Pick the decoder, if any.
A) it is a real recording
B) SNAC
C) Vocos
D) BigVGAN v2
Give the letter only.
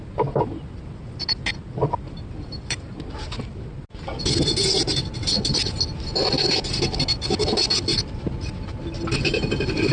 A